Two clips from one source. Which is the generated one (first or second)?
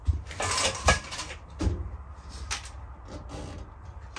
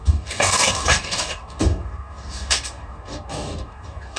second